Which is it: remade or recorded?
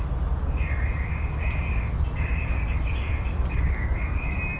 recorded